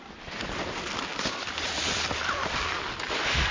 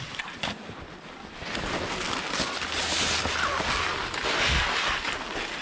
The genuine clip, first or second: second